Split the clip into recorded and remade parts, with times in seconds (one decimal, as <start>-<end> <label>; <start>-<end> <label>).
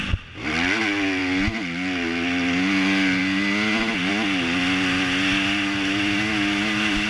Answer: 0.0-7.1 recorded